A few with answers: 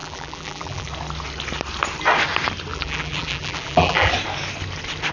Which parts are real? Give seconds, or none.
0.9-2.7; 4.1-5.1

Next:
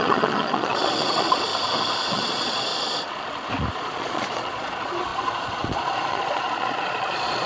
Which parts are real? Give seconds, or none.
1.5-2.1; 2.7-3.7

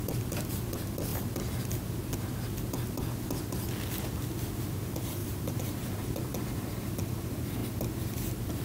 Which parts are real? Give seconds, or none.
0.0-5.2; 5.8-8.6

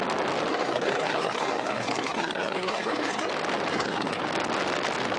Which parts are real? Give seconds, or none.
0.0-0.5; 3.3-3.7; 4.2-5.2

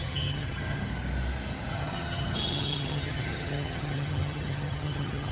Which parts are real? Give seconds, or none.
0.9-1.7